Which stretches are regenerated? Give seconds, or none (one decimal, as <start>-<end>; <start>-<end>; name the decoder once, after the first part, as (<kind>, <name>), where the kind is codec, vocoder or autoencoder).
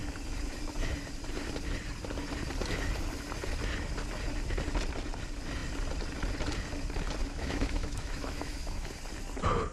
7.2-8.9 (autoencoder, DAC-VAE)